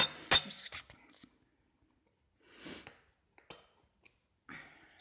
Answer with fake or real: real